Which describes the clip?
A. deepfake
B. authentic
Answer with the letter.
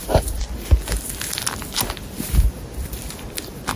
B